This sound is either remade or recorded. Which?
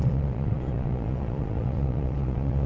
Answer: remade